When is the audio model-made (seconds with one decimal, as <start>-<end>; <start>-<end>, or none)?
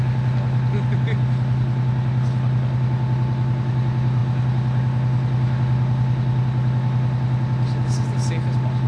none